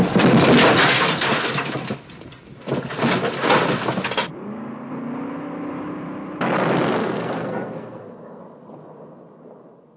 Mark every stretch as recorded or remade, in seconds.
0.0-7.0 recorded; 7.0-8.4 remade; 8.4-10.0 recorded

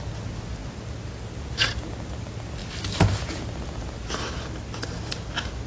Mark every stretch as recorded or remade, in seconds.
0.0-5.7 recorded